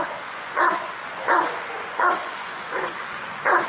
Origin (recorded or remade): remade